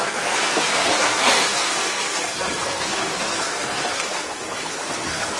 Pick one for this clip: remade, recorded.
remade